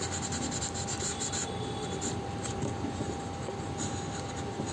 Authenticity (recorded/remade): recorded